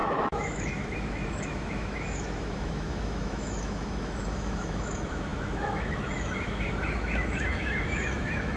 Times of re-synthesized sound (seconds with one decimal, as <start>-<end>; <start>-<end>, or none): 0.0-8.6